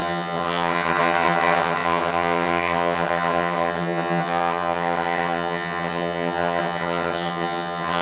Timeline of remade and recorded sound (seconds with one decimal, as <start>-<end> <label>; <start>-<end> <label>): 0.0-8.0 remade